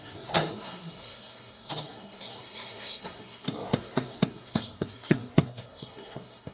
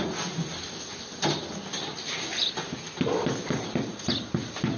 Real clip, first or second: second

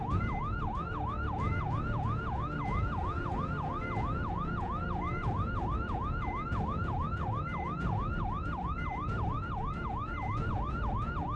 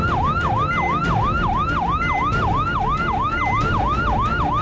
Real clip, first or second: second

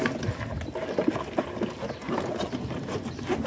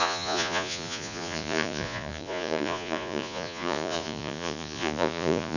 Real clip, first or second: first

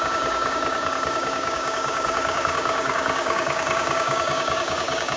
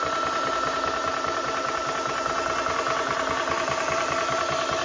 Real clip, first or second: second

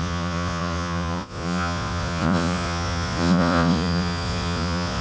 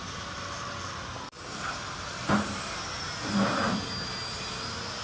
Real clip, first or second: second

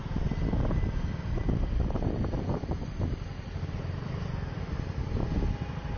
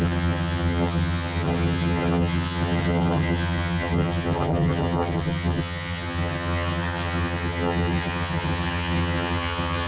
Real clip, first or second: first